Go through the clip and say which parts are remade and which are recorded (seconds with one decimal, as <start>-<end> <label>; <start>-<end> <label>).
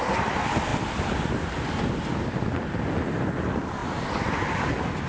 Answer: 0.0-5.1 recorded